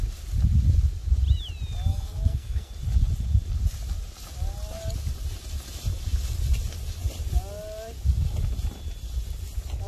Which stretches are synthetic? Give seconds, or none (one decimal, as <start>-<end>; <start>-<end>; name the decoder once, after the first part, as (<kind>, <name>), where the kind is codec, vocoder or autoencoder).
1.9-2.7 (codec, SNAC)